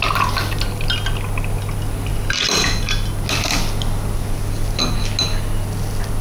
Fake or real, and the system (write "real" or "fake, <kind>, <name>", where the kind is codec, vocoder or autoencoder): real